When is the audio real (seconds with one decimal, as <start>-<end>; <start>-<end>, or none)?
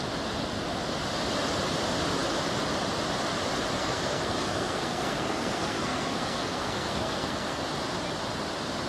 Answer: 0.0-3.8; 7.6-8.9